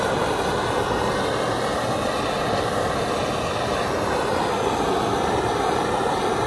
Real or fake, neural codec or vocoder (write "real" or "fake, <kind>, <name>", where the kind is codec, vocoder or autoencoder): real